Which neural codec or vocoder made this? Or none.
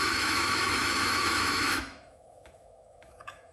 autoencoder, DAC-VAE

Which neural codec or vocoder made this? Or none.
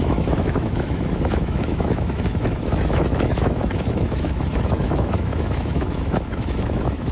autoencoder, DAC-VAE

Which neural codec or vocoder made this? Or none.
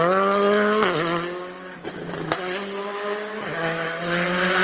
none